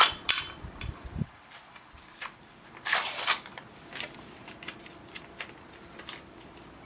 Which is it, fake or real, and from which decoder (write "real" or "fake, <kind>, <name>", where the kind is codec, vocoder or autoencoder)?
fake, vocoder, BigVGAN v2